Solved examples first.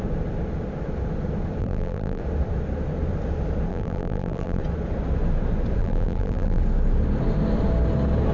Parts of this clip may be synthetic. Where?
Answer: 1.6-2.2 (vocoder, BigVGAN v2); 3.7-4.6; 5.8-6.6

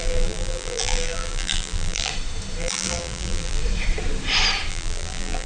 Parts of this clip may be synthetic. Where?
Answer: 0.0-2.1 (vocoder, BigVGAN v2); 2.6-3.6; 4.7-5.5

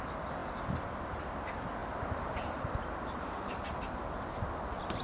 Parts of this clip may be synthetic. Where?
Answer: 1.8-3.5 (vocoder, BigVGAN v2)

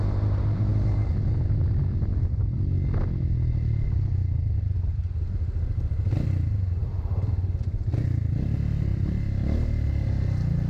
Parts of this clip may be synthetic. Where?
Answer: none